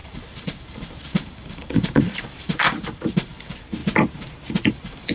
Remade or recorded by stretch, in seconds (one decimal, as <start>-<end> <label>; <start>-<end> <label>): 0.0-3.8 remade; 3.8-4.6 recorded; 4.6-5.1 remade